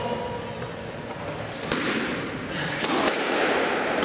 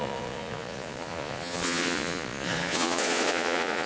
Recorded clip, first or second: first